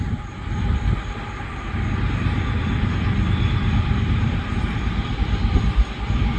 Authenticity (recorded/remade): remade